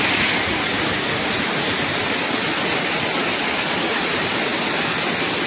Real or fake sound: real